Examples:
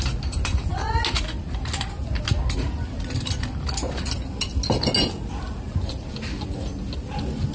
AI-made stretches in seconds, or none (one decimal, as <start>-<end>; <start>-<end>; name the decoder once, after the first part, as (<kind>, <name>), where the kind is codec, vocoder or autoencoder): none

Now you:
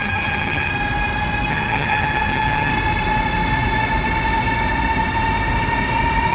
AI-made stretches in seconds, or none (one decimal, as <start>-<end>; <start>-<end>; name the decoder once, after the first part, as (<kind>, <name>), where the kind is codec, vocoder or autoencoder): 0.0-0.7 (vocoder, HiFi-GAN); 1.5-2.7

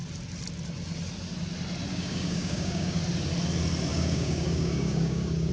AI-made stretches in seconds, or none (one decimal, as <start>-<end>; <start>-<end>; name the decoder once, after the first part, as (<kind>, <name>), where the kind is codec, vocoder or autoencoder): 1.9-3.0 (codec, DAC); 3.9-5.5

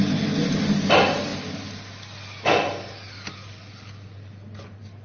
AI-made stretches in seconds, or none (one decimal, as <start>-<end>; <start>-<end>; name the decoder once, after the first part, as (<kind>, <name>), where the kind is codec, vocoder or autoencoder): none

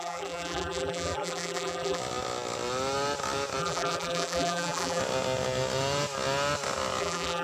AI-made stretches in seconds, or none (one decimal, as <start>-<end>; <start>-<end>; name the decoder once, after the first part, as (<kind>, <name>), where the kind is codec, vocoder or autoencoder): 0.0-2.0 (vocoder, BigVGAN v2); 3.6-5.0; 7.0-7.4

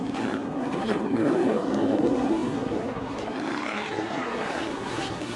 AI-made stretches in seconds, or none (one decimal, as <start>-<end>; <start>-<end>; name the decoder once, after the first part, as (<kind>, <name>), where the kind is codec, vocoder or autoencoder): 0.0-5.4 (codec, SNAC)

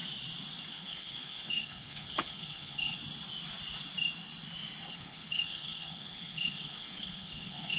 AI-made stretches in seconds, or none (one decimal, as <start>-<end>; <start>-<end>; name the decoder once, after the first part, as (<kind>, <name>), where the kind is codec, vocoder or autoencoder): 0.7-3.0 (codec, HILCodec); 4.9-7.8